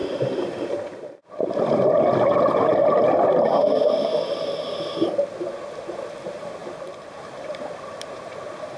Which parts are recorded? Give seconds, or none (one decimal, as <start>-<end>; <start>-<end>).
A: 1.5-6.6; 8.3-8.8